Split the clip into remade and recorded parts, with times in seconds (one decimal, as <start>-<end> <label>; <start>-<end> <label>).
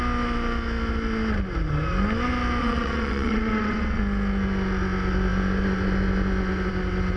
0.0-2.6 recorded; 2.6-4.0 remade; 4.0-7.2 recorded